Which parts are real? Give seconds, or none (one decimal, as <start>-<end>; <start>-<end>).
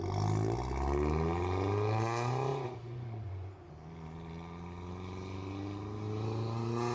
0.0-2.5; 3.7-6.9